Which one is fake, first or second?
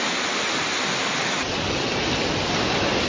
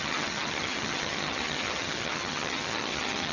second